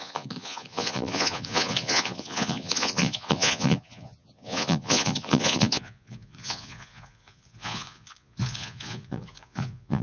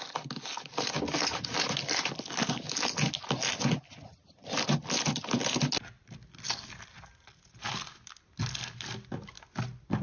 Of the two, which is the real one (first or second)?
second